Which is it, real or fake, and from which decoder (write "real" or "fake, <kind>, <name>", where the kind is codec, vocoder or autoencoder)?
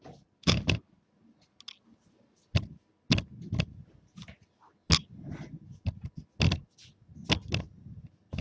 real